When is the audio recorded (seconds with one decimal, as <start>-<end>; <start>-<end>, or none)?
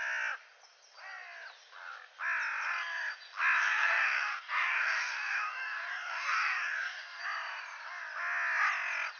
0.0-3.6; 7.2-9.2